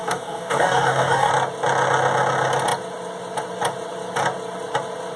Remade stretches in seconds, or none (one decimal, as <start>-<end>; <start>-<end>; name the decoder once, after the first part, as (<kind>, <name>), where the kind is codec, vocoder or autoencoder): 0.0-1.3 (codec, DAC)